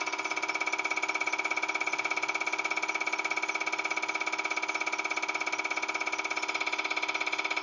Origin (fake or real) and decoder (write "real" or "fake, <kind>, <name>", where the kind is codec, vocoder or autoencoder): real